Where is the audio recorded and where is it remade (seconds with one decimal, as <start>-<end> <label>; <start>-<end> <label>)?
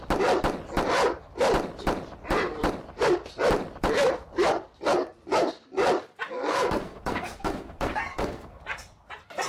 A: 0.0-6.3 recorded; 6.3-8.6 remade; 8.6-9.5 recorded